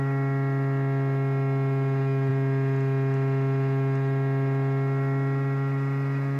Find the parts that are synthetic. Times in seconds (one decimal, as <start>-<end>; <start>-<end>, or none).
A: none